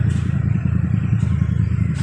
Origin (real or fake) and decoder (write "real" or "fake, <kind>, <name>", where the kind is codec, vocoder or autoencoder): real